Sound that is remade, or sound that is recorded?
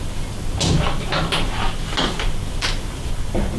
recorded